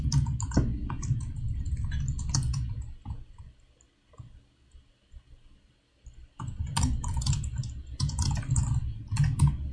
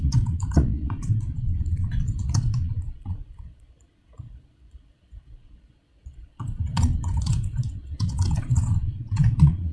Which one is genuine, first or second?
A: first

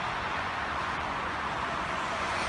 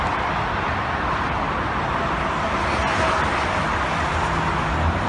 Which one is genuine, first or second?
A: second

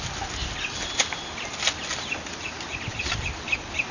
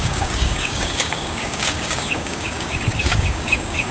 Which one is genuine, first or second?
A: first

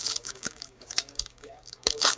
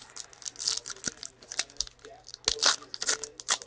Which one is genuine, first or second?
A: second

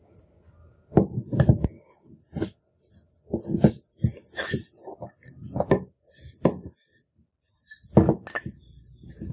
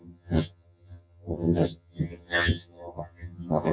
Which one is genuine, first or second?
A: first